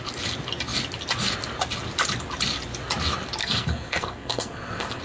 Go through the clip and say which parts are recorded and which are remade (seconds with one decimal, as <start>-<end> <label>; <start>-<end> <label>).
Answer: 0.0-3.4 recorded; 3.4-5.0 remade